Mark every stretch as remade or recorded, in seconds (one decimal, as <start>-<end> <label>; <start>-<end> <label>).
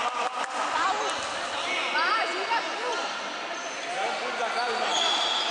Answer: 0.0-5.5 recorded